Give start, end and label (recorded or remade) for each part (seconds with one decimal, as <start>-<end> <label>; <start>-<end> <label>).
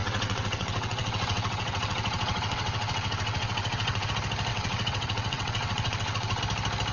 0.0-4.1 remade; 4.1-4.5 recorded; 4.5-6.4 remade; 6.4-6.9 recorded